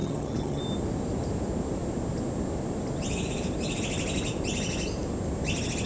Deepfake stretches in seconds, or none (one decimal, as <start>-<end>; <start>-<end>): 0.0-0.6